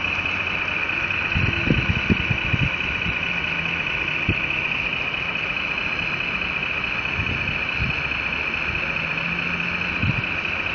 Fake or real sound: real